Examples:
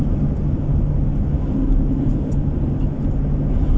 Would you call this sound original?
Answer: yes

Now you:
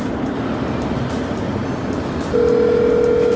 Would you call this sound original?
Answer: yes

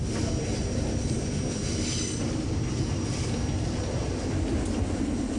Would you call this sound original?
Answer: yes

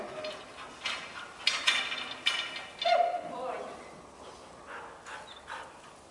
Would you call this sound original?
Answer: yes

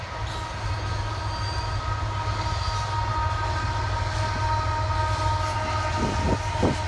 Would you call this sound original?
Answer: yes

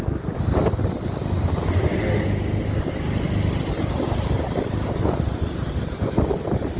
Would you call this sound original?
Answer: yes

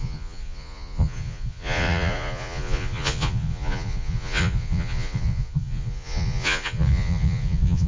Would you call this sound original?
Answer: no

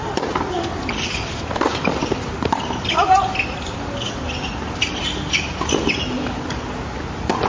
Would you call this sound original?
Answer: yes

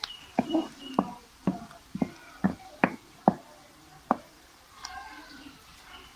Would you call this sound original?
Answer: no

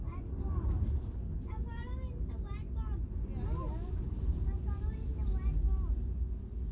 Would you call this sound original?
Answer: yes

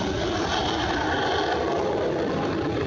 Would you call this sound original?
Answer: no